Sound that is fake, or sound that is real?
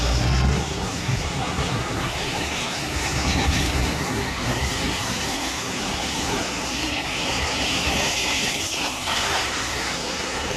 fake